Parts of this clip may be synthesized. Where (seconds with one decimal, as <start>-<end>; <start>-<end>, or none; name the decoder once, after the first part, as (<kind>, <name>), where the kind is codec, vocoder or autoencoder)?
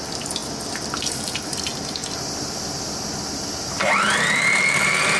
0.0-0.4 (vocoder, BigVGAN v2); 1.1-2.0; 3.6-5.2